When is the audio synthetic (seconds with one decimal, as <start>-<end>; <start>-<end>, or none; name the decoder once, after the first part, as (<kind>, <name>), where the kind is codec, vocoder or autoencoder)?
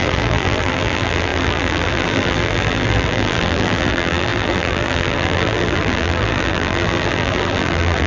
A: 0.0-8.1 (vocoder, BigVGAN v2)